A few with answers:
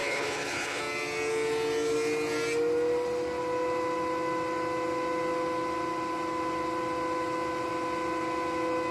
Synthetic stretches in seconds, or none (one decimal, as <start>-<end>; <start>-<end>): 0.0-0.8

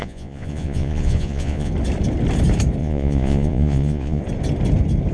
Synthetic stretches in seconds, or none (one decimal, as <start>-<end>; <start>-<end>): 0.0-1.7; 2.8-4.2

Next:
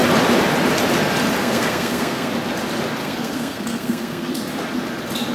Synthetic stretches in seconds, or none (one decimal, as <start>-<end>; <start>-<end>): 1.4-2.3; 3.0-4.3

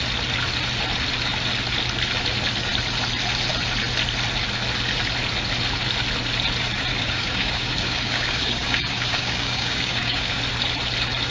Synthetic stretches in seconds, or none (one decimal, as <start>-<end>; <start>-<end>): 6.9-10.4

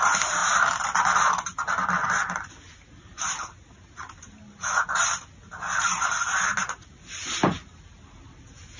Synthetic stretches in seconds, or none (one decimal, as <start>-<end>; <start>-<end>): none